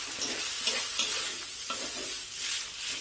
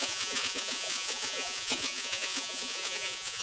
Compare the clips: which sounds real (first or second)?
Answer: first